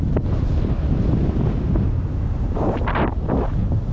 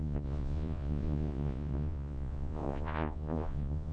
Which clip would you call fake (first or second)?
second